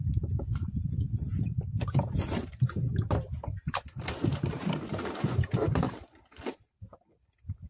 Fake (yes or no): yes